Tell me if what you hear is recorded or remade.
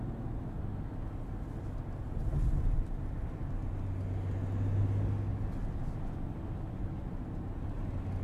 recorded